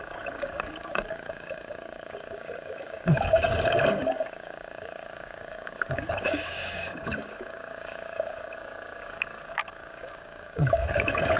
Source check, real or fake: fake